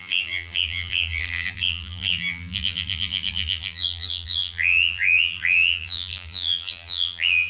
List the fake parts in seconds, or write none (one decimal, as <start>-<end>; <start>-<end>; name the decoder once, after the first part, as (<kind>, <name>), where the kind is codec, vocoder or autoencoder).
0.0-7.5 (vocoder, BigVGAN v2)